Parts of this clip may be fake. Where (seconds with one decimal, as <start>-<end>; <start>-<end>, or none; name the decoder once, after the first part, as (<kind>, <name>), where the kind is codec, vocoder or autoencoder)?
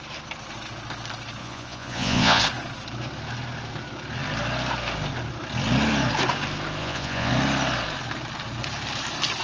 1.4-2.4 (vocoder, Vocos); 6.8-7.3